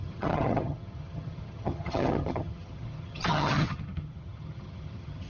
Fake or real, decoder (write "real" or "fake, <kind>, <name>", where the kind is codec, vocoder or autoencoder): fake, vocoder, HiFi-GAN